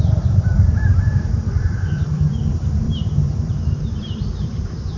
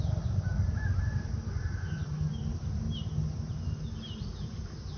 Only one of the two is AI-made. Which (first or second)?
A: first